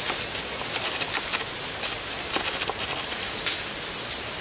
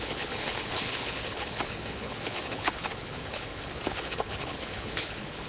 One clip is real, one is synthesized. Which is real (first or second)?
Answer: first